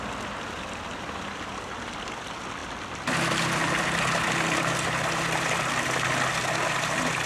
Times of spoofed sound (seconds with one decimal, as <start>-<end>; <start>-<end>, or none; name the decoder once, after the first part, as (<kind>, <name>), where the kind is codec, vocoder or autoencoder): none